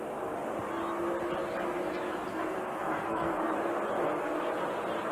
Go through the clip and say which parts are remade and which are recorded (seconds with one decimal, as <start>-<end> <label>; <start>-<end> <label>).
0.0-2.3 recorded; 2.3-3.5 remade; 3.5-4.0 recorded; 4.0-4.5 remade; 4.5-5.1 recorded